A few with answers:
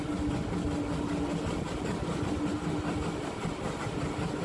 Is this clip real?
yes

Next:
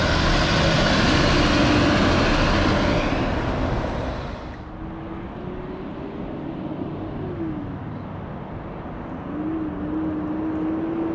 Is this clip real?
yes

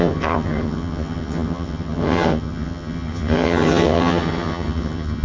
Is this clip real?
no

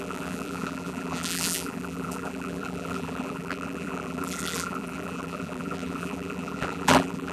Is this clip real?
no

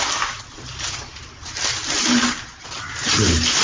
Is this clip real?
yes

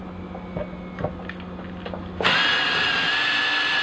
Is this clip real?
yes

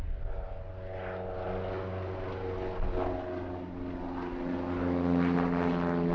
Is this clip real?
yes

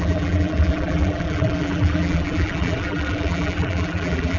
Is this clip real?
no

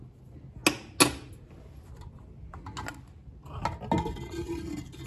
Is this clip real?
yes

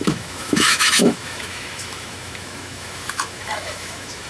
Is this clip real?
no